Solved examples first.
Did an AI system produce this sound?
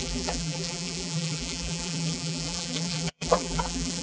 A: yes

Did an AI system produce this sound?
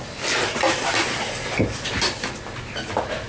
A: no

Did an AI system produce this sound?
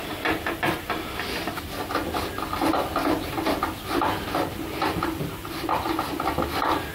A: no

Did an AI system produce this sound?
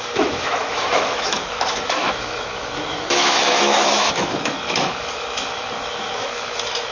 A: yes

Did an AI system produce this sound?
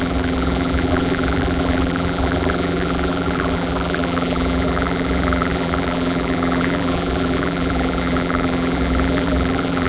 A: yes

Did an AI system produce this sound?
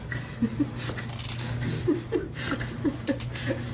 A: no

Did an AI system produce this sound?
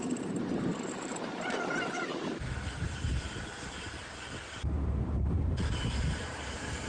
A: yes